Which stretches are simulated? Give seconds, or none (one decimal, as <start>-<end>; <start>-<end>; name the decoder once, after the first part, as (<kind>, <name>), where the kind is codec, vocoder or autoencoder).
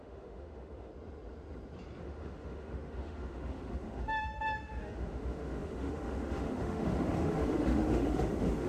0.0-0.9 (autoencoder, DAC-VAE); 2.0-8.7